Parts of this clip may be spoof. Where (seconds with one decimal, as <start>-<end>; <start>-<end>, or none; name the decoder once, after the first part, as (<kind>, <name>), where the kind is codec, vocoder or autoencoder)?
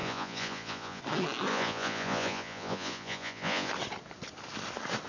0.0-1.0 (vocoder, Vocos); 1.5-3.7